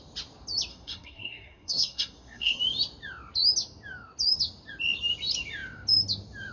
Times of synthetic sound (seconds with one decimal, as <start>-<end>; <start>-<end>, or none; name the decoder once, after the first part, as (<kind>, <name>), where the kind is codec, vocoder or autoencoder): 0.7-2.6 (codec, SNAC)